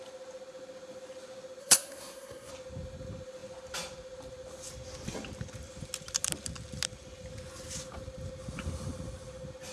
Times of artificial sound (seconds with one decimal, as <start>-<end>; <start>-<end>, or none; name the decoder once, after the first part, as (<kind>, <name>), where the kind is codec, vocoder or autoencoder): 1.6-2.5 (codec, SNAC)